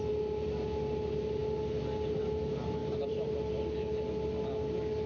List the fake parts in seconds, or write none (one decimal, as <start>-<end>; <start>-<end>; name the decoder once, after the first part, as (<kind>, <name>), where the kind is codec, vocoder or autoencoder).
2.8-3.3 (vocoder, BigVGAN v2)